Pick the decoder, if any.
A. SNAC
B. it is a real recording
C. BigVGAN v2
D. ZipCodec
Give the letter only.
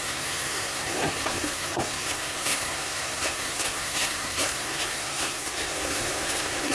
A